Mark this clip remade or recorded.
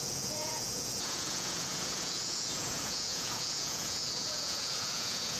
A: remade